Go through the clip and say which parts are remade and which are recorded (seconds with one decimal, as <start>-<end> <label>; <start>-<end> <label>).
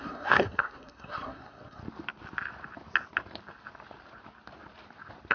0.0-1.8 remade; 1.8-5.3 recorded